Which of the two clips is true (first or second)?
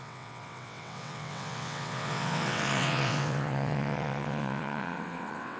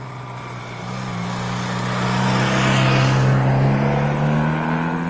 second